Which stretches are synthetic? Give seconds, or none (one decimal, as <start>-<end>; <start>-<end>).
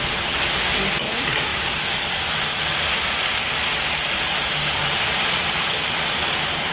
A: 0.0-3.4; 4.8-6.7